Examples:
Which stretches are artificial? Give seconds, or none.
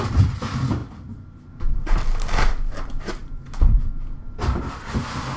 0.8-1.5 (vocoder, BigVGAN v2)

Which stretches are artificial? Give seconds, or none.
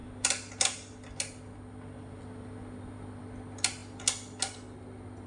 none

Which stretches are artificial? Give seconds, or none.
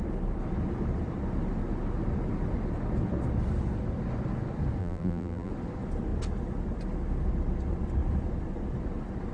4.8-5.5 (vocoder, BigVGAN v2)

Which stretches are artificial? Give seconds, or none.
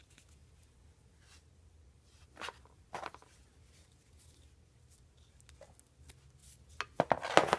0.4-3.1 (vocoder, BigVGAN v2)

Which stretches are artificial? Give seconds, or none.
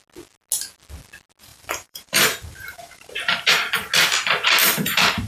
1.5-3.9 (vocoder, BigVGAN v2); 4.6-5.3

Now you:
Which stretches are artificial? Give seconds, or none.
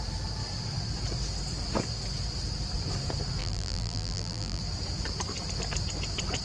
3.4-4.6 (vocoder, BigVGAN v2)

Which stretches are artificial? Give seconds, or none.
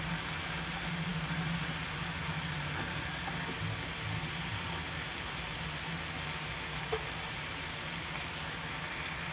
1.1-1.6 (vocoder, BigVGAN v2)